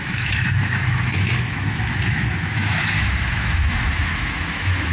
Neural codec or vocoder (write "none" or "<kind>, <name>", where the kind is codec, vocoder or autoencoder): autoencoder, DAC-VAE